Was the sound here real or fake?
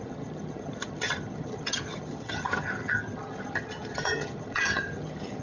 fake